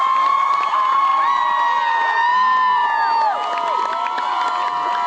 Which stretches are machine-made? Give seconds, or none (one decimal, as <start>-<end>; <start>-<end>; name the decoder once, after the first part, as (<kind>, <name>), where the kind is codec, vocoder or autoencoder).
none